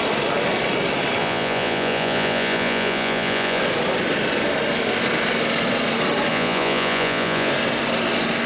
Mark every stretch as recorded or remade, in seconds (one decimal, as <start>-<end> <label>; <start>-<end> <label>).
0.0-1.2 recorded; 1.2-3.6 remade; 3.6-6.3 recorded; 6.3-7.5 remade; 7.5-8.5 recorded